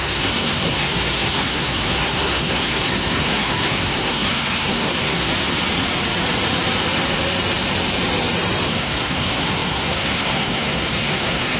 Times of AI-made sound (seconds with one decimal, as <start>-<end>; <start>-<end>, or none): 0.0-5.3; 8.7-11.6

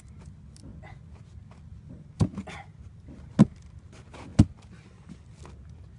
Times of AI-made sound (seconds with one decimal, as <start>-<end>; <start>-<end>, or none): none

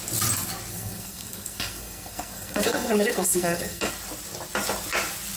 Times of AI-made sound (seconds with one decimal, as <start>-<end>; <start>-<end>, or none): 0.7-3.9